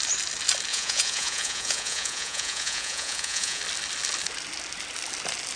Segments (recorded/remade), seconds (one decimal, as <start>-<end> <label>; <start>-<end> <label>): 0.0-0.7 recorded; 0.7-3.6 remade; 3.6-5.6 recorded